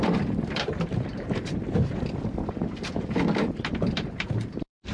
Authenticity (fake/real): fake